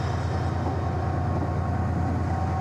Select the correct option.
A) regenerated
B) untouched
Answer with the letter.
B